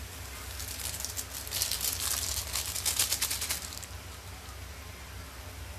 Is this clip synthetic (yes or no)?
no